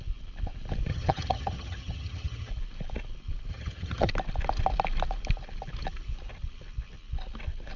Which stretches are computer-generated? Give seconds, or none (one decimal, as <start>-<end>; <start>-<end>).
0.9-2.5; 3.5-4.1